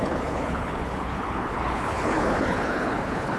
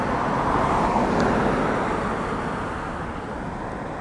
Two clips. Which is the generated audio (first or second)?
first